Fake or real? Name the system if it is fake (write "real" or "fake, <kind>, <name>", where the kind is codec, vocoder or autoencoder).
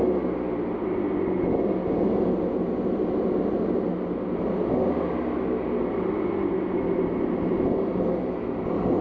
real